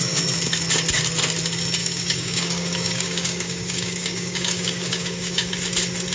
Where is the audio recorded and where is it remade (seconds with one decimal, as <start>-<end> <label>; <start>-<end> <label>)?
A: 0.0-1.8 recorded; 1.8-5.5 remade; 5.5-6.1 recorded